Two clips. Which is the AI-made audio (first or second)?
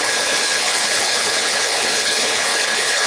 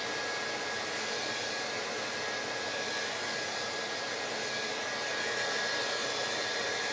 first